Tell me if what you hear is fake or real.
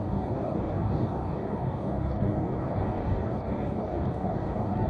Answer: fake